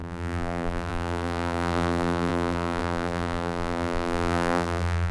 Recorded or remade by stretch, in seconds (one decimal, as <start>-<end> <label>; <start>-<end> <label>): 0.0-5.1 remade